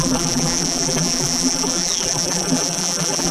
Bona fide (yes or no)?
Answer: no